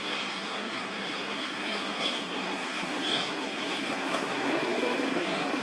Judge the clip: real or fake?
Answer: fake